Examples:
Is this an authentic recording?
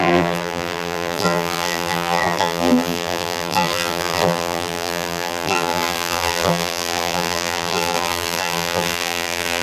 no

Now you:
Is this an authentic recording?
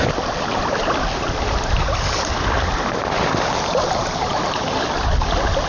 yes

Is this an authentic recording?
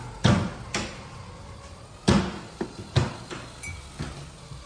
yes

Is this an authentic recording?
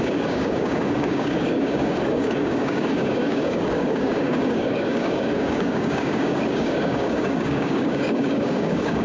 no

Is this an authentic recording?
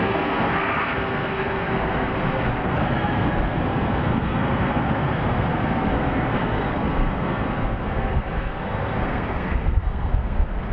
no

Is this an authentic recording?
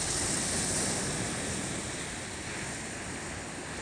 yes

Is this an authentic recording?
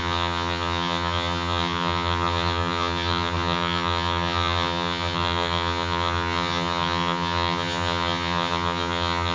no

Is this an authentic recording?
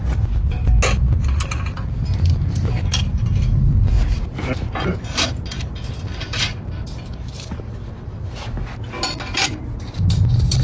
yes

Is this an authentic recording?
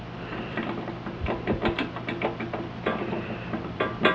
no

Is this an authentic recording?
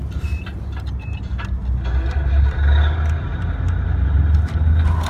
yes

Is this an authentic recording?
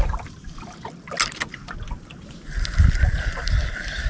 yes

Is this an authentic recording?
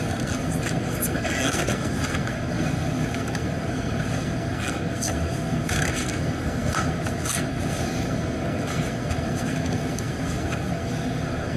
no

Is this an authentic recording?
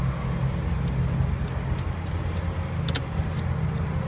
yes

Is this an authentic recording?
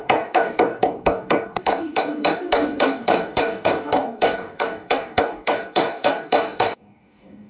no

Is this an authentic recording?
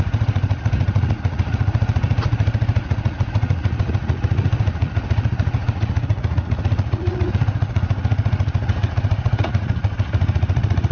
no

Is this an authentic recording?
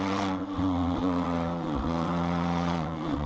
no